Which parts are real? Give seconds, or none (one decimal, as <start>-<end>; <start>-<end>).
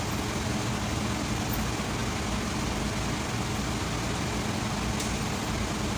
0.0-6.0